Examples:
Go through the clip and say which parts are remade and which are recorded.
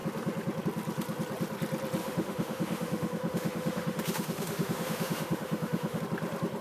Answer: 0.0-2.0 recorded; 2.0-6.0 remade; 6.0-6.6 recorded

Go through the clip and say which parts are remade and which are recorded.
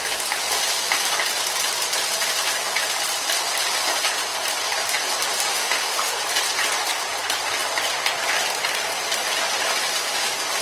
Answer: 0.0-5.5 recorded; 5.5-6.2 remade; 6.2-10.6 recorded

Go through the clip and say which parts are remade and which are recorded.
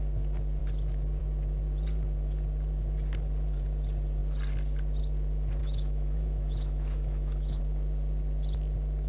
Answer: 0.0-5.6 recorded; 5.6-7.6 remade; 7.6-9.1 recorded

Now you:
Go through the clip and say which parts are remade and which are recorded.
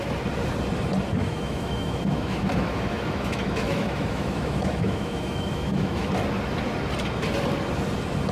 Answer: 0.0-1.2 recorded; 1.2-6.1 remade; 6.1-8.3 recorded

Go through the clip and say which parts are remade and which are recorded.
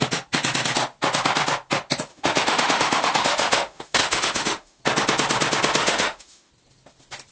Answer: 0.0-2.1 recorded; 2.1-4.8 remade; 4.8-5.8 recorded; 5.8-6.5 remade; 6.5-7.3 recorded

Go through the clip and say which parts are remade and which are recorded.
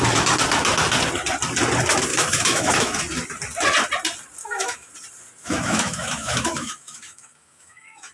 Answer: 0.0-2.1 recorded; 2.1-3.0 remade; 3.0-4.4 recorded; 4.4-4.9 remade; 4.9-5.4 recorded; 5.4-8.1 remade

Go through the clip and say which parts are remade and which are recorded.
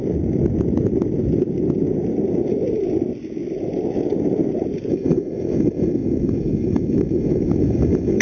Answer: 0.0-4.9 recorded; 4.9-8.2 remade